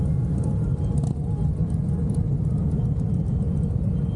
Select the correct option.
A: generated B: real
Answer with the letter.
B